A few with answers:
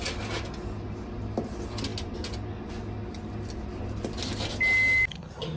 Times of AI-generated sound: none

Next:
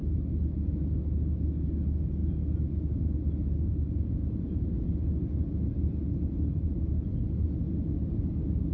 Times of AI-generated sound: none

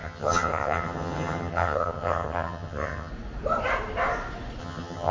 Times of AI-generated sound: 0.0-3.1 (vocoder, HiFi-GAN); 4.6-5.1

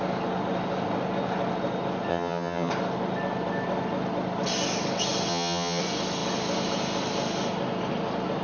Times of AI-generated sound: 2.1-2.7 (vocoder, HiFi-GAN); 5.3-5.8

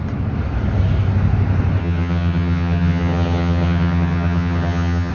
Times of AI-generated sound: 1.8-5.1 (vocoder, HiFi-GAN)

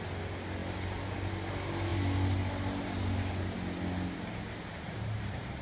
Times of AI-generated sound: none